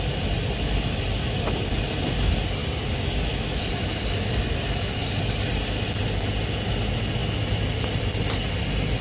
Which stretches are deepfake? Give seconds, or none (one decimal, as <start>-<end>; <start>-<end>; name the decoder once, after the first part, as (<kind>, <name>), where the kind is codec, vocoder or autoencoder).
none